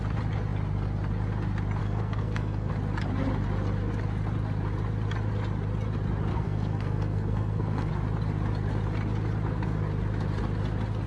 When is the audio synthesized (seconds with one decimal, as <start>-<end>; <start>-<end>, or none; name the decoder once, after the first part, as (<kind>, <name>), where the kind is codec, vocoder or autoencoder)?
1.8-2.7 (codec, SNAC); 6.3-7.9